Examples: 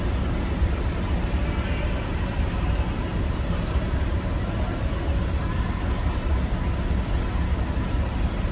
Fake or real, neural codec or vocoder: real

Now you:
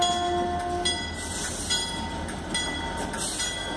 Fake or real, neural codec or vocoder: real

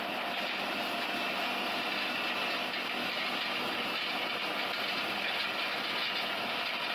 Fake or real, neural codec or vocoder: real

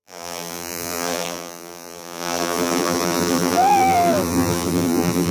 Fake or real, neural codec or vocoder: fake, vocoder, BigVGAN v2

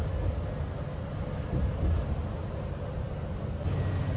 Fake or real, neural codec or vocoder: real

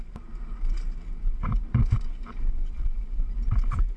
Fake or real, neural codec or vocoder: fake, vocoder, BigVGAN v2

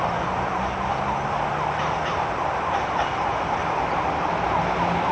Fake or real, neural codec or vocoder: real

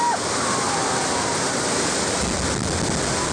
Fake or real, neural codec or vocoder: real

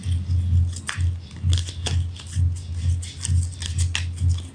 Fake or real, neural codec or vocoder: real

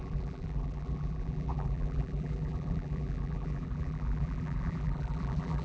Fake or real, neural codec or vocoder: fake, vocoder, BigVGAN v2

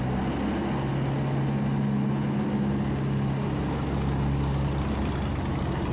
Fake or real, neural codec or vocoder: real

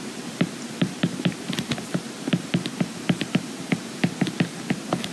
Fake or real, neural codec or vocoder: fake, vocoder, BigVGAN v2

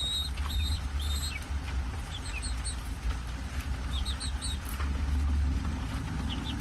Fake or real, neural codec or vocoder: real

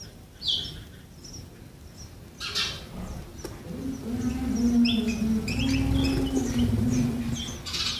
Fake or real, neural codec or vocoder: real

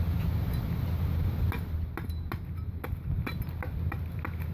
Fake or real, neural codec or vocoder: real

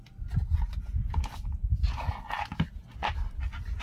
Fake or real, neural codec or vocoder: real